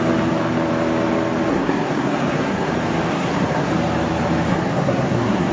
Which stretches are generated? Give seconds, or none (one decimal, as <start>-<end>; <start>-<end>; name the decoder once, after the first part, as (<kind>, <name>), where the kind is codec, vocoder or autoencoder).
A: 1.5-2.7 (codec, SNAC); 3.1-3.7; 4.5-5.5